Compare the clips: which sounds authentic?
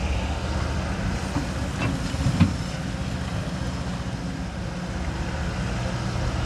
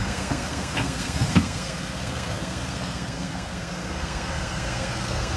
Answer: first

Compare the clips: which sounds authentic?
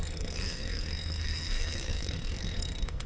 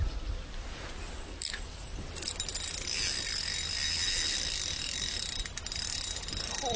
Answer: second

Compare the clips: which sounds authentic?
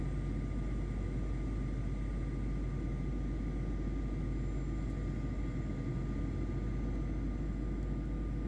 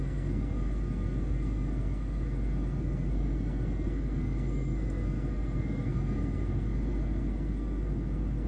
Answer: first